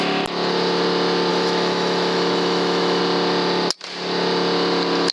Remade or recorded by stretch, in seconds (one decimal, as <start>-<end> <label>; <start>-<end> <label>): 0.0-1.3 recorded; 1.3-3.0 remade; 3.0-5.1 recorded